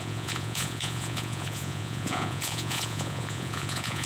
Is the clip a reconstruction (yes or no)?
yes